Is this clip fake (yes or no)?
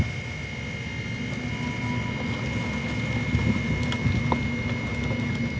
no